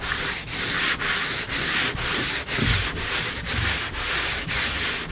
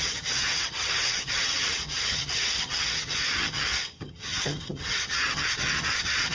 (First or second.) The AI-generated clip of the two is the second